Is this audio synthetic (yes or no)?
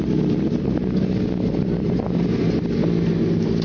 no